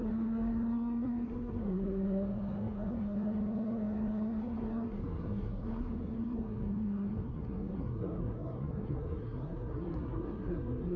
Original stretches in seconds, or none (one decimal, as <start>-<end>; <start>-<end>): none

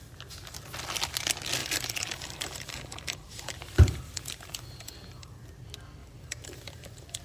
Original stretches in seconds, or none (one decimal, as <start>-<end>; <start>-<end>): 0.0-1.6; 5.4-6.0

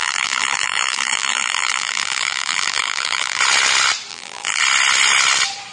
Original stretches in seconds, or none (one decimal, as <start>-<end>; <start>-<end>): 3.4-4.1; 4.6-5.7

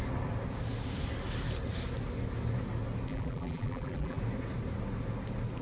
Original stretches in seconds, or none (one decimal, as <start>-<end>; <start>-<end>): 0.0-3.1; 4.2-5.6

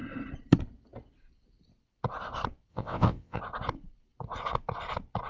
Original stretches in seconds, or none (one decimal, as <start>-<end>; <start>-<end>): 0.0-2.7; 3.4-5.3